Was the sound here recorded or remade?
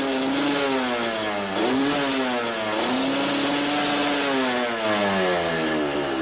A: recorded